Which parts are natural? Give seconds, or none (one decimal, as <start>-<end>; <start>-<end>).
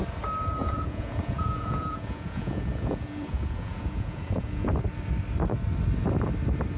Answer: 0.0-0.6; 4.7-6.8